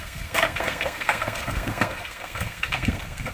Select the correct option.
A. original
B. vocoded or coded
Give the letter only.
B